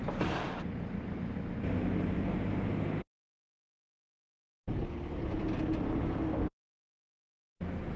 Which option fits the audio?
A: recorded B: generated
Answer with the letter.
A